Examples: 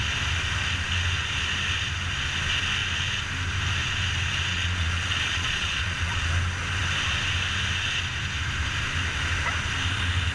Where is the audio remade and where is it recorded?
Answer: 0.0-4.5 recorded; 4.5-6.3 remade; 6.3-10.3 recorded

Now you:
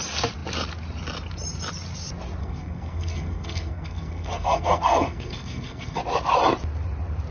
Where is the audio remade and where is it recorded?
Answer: 0.0-2.4 recorded; 2.4-6.0 remade; 6.0-7.3 recorded

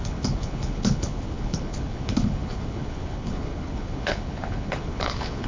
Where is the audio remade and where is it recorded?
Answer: 0.0-5.5 remade

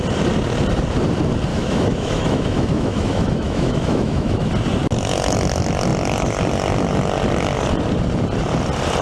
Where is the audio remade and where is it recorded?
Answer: 0.0-1.5 recorded; 1.5-4.5 remade; 4.5-9.0 recorded

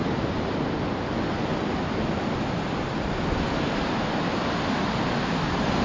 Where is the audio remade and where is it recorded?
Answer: 0.0-5.8 recorded

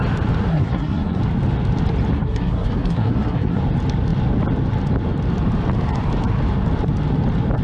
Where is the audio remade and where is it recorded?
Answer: 0.0-0.4 recorded; 0.4-1.2 remade; 1.2-2.1 recorded; 2.1-3.6 remade; 3.6-7.6 recorded